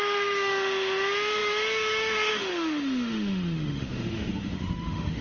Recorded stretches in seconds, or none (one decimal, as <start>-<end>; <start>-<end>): none